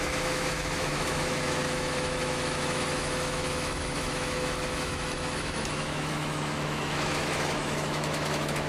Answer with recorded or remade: remade